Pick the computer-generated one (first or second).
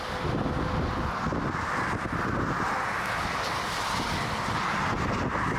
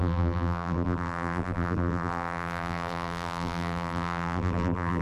second